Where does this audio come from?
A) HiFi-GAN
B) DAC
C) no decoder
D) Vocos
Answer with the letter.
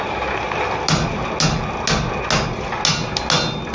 C